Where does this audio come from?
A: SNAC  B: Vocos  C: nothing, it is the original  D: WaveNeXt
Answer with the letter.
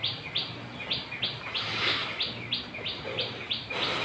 C